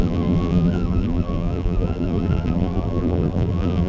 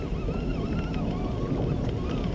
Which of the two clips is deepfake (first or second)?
first